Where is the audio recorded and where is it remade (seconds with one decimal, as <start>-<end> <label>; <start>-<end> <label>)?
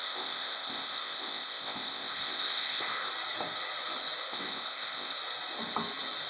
0.0-3.1 remade; 3.1-4.2 recorded; 4.2-5.2 remade; 5.2-6.3 recorded